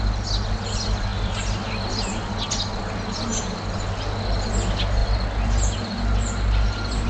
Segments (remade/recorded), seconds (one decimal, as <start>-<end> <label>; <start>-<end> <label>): 0.0-7.1 recorded